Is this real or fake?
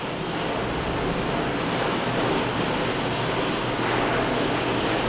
real